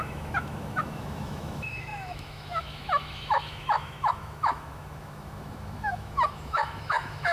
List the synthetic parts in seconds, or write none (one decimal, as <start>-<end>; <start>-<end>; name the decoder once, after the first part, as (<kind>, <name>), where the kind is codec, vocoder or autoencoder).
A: 0.0-7.3 (autoencoder, DAC-VAE)